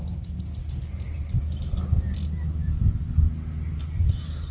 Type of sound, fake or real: real